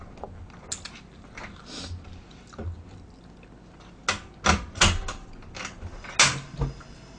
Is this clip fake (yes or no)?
no